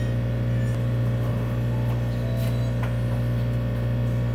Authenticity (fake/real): real